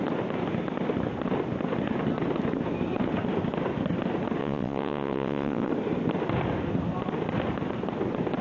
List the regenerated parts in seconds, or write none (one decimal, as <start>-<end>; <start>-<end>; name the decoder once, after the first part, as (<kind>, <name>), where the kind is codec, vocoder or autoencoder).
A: 4.4-5.7 (vocoder, WaveNeXt)